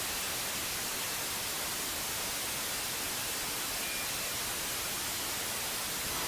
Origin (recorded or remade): recorded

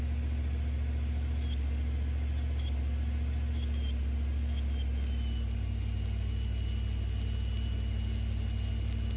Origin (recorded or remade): recorded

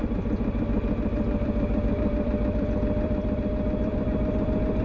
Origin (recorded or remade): remade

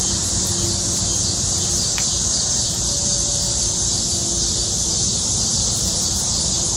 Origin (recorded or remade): remade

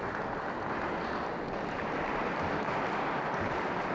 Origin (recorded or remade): recorded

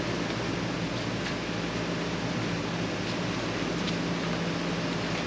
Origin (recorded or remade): recorded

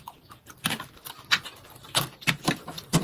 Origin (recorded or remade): remade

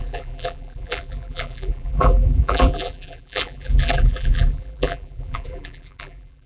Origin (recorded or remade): remade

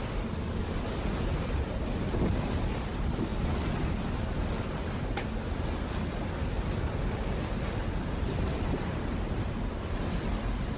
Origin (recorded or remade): recorded